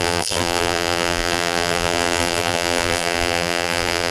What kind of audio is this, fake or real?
fake